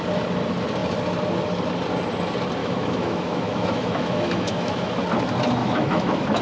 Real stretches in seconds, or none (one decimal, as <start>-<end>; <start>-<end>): 0.0-2.6; 5.0-5.6